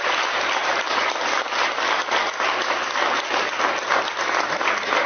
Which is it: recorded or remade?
recorded